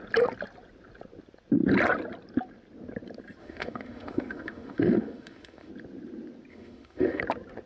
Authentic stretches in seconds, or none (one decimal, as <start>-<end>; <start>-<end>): 0.0-3.4; 5.7-6.5; 7.2-7.7